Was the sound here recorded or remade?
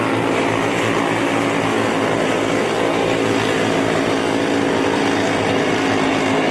recorded